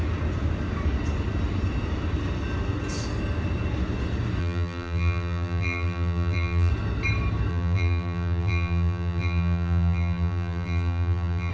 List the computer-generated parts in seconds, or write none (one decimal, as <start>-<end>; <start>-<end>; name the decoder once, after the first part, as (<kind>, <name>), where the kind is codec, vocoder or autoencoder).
4.4-6.7 (vocoder, BigVGAN v2); 7.5-11.5